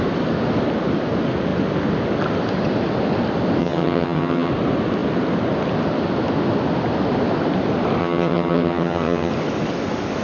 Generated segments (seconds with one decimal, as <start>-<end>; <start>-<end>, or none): 3.6-4.5; 8.0-9.3